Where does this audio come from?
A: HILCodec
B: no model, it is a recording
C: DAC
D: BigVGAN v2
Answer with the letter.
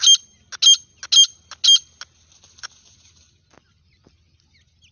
B